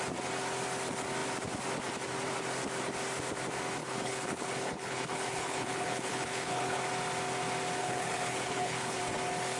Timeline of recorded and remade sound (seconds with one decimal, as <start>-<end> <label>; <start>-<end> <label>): 0.0-3.8 recorded; 3.8-6.8 remade; 6.8-7.8 recorded; 7.8-9.0 remade; 9.0-9.6 recorded